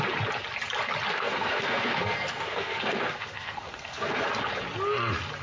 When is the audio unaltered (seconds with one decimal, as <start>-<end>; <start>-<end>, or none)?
0.0-1.1; 4.3-5.4